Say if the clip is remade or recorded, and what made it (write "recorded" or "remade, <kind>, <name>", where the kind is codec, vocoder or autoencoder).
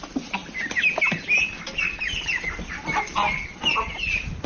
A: recorded